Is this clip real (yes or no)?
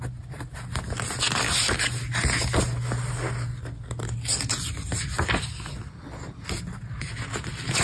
yes